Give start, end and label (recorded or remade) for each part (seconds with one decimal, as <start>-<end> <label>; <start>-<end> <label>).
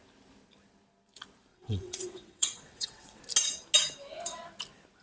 0.0-1.5 recorded; 1.5-3.2 remade; 3.2-5.0 recorded